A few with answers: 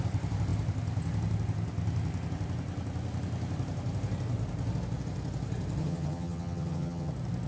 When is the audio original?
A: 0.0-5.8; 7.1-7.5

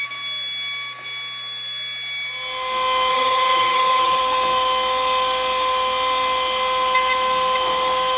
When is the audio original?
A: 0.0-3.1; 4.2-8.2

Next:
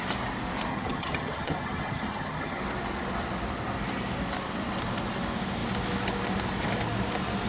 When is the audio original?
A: 0.0-0.7; 2.6-7.5